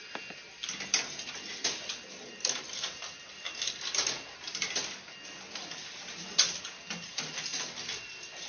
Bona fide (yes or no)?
yes